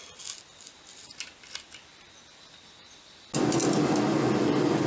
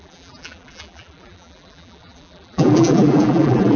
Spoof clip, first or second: second